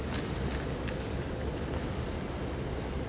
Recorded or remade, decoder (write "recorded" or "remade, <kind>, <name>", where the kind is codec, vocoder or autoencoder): recorded